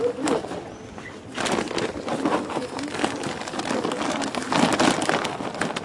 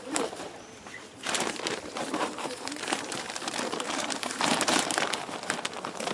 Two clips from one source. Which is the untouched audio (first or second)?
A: first